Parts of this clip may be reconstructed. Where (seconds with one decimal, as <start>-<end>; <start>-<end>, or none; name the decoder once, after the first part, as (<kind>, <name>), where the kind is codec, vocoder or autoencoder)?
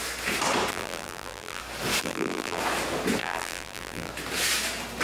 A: 0.7-1.6 (vocoder, BigVGAN v2); 2.0-2.6; 3.2-4.1